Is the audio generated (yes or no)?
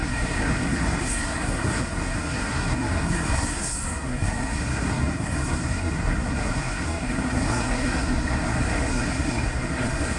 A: yes